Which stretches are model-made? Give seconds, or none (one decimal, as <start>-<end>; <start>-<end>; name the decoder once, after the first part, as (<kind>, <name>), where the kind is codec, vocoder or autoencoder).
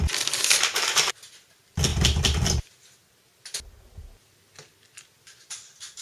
none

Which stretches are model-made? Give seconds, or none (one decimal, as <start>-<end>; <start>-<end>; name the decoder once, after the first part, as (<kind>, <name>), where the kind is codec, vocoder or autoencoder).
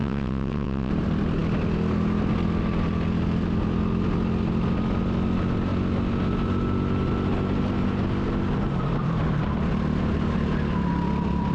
0.0-0.9 (vocoder, WaveNeXt)